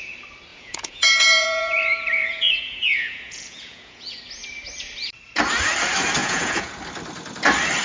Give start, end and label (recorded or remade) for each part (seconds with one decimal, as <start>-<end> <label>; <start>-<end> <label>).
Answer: 0.0-0.5 recorded; 0.5-4.2 remade; 4.2-6.2 recorded; 6.2-6.8 remade; 6.8-7.8 recorded